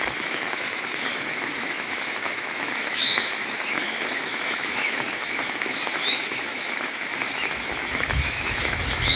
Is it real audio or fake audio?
fake